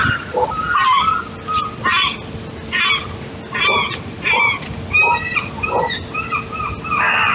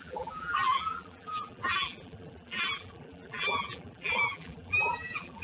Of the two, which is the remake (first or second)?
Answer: second